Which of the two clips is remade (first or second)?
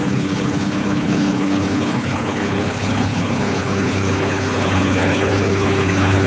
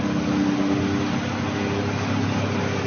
first